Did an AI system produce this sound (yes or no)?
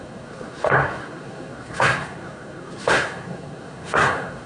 yes